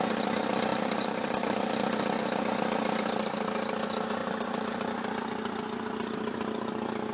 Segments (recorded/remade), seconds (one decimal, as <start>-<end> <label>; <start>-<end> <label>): 0.0-0.7 recorded; 0.7-1.7 remade; 1.7-4.2 recorded; 4.2-4.9 remade; 4.9-7.1 recorded